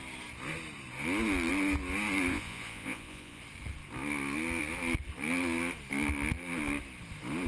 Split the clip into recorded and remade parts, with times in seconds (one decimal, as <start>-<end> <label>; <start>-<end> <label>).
0.0-2.3 recorded; 2.3-3.4 remade; 3.4-7.5 recorded